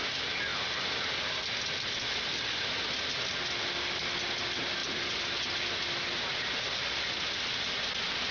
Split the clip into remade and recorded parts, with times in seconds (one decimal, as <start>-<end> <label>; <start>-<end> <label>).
0.0-8.3 recorded